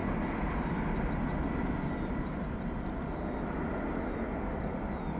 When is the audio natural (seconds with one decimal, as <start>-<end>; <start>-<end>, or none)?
0.0-5.2